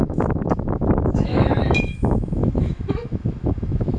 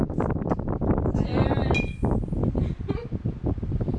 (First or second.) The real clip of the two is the second